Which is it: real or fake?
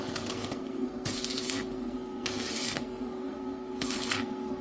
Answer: fake